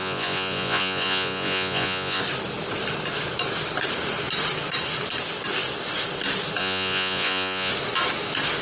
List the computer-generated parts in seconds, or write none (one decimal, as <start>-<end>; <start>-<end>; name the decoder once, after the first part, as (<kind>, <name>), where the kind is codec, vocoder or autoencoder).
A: 0.0-2.2 (vocoder, Vocos); 6.6-7.7